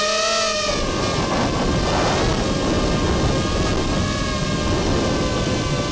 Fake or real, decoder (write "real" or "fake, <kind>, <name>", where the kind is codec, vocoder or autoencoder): real